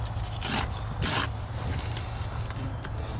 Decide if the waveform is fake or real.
real